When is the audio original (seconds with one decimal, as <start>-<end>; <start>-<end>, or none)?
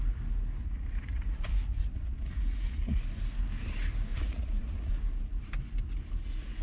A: 0.0-0.6; 3.0-4.1; 4.9-6.6